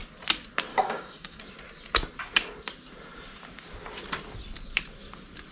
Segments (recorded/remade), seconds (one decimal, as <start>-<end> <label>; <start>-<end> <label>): 0.0-0.7 recorded; 0.7-1.4 remade; 1.4-5.5 recorded